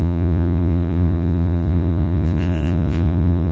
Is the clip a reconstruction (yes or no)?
yes